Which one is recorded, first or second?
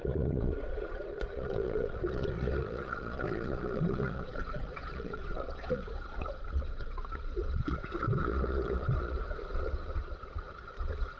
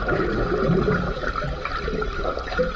second